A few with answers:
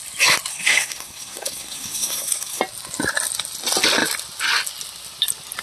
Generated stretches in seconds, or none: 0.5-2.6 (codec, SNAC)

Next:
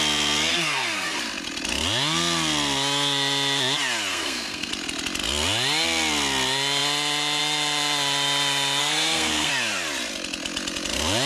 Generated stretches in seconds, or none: 0.5-1.2 (codec, SNAC); 4.1-4.7; 8.8-9.5

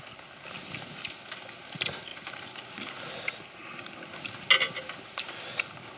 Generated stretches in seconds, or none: none

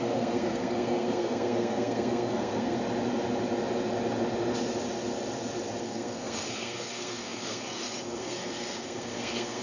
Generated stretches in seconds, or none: 0.0-2.8 (codec, SNAC); 5.8-9.6